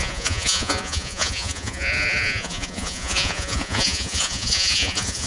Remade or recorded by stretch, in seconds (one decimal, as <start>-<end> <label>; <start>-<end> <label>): 0.0-5.3 remade